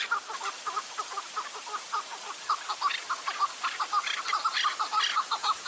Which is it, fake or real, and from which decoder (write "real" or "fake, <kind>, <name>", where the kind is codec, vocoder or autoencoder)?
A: real